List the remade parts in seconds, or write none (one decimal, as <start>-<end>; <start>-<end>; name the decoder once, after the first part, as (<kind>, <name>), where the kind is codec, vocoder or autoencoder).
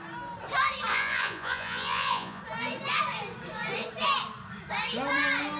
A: 0.9-2.4 (vocoder, Vocos)